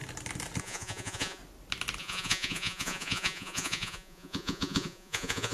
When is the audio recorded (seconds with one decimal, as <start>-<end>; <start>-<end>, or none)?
0.0-0.6; 1.4-2.0